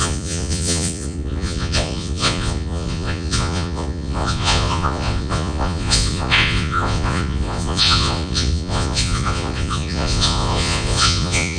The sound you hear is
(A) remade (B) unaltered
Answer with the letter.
A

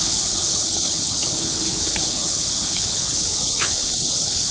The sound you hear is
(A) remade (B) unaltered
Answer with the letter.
A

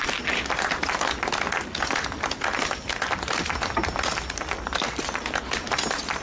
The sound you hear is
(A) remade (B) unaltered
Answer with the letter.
B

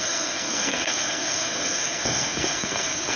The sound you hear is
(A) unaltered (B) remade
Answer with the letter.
B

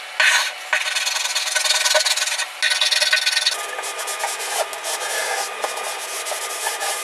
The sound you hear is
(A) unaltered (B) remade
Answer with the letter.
A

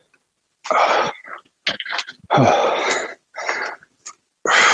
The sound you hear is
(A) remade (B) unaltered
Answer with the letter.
B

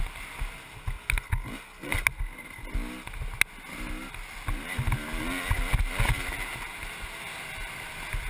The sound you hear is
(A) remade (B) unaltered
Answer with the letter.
B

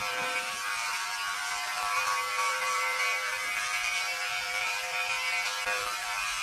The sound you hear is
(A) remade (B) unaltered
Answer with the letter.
A